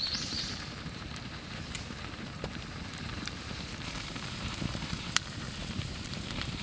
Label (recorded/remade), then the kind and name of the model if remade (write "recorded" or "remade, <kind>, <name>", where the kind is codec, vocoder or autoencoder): remade, vocoder, BigVGAN v2